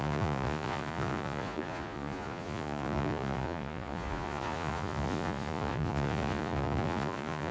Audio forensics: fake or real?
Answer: fake